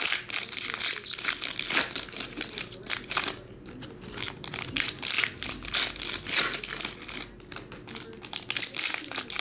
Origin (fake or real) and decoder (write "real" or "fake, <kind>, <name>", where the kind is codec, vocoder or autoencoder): real